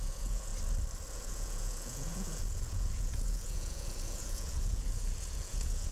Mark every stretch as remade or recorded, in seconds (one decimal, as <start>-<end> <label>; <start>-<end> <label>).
0.0-0.5 remade; 0.5-1.1 recorded; 1.1-5.9 remade